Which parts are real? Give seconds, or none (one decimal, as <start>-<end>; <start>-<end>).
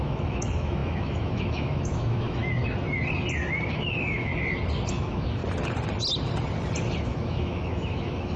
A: 2.4-3.7; 4.3-4.9; 5.4-7.0